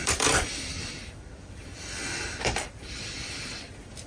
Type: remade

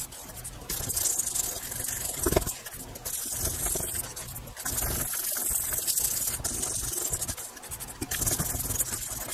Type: recorded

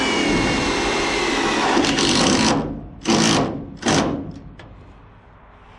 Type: recorded